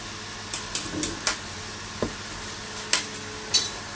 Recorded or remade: recorded